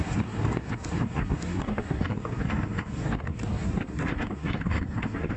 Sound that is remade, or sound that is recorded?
remade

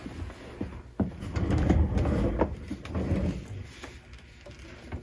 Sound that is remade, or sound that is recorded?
recorded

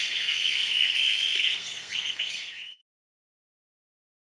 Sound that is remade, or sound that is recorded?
remade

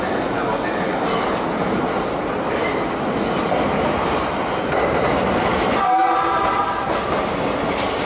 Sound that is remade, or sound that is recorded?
recorded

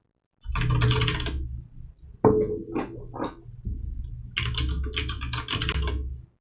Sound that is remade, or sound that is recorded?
recorded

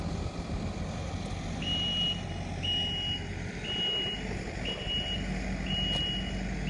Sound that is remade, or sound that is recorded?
recorded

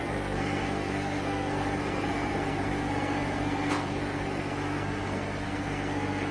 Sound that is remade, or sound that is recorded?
remade